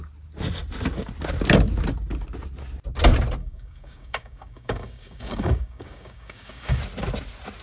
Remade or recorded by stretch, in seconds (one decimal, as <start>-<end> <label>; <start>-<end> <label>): 0.0-3.4 recorded; 3.4-6.8 remade; 6.8-7.6 recorded